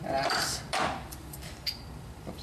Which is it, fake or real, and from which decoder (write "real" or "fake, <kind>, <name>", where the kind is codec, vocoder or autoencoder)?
fake, vocoder, BigVGAN v2